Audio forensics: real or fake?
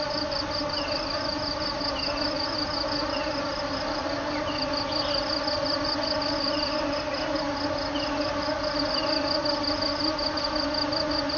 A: real